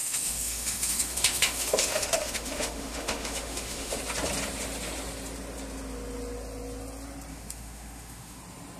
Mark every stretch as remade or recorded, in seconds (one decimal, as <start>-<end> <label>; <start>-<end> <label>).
0.0-4.0 remade; 4.0-7.3 recorded; 7.3-8.4 remade; 8.4-8.8 recorded